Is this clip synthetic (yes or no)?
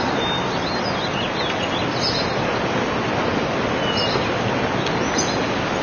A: no